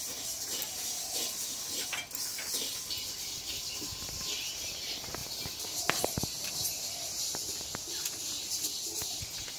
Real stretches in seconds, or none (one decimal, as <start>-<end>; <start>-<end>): 0.0-9.6